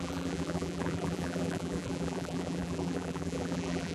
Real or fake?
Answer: fake